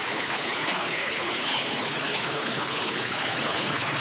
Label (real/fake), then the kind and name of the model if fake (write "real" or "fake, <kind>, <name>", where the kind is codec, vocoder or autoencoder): fake, codec, HILCodec